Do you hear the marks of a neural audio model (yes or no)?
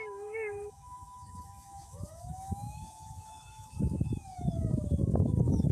yes